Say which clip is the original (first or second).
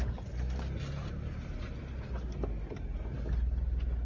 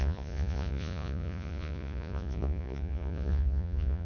first